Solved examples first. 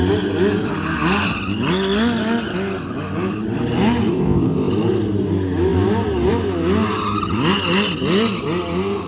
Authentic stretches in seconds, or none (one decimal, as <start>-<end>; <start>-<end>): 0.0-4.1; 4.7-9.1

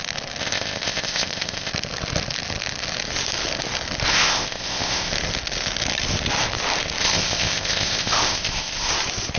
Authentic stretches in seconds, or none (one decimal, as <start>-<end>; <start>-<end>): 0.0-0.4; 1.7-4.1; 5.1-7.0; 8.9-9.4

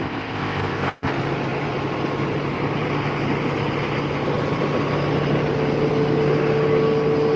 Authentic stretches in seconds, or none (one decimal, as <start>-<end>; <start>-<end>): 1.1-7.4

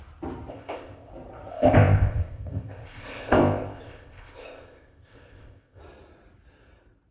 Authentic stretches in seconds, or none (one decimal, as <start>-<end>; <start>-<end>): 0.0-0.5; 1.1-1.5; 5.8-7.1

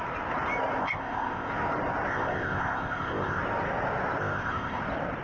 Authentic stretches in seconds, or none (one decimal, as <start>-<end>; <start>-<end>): 0.0-0.8; 1.5-2.1; 3.4-4.2; 4.8-5.2

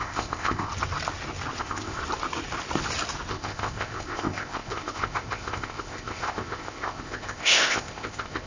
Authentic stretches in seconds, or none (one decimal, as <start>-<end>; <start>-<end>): 0.7-1.6; 2.0-3.3

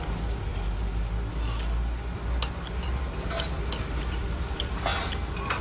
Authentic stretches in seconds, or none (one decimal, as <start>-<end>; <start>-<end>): 0.0-5.6